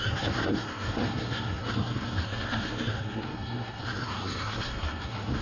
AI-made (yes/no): yes